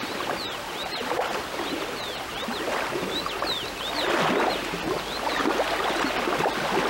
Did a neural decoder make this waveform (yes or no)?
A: no